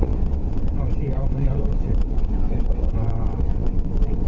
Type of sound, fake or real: fake